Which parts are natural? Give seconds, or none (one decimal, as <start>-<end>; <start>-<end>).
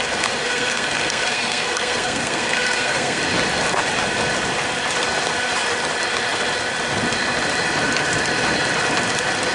0.0-0.4; 3.2-9.5